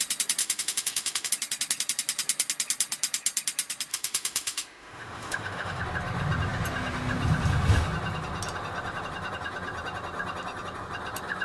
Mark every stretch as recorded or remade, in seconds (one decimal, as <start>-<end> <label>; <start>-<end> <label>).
0.0-0.4 recorded; 0.4-1.3 remade; 1.3-3.9 recorded; 3.9-5.8 remade; 5.8-11.4 recorded